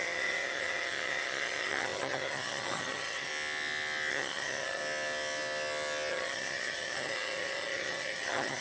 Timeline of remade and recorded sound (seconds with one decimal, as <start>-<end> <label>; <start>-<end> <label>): 0.0-3.3 remade; 3.3-4.1 recorded; 4.1-4.8 remade; 4.8-6.1 recorded; 6.1-8.6 remade